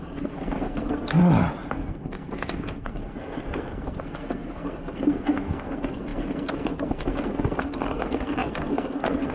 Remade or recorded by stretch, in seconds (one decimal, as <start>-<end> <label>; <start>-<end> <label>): 0.0-1.2 remade; 1.2-1.7 recorded; 1.7-9.3 remade